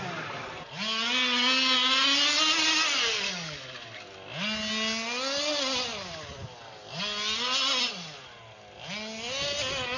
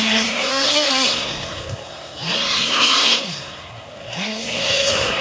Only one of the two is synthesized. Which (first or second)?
second